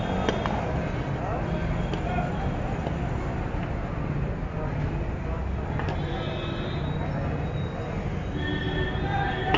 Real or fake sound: real